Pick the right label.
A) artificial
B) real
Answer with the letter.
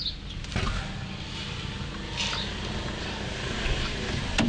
B